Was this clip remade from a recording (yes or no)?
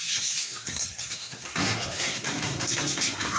yes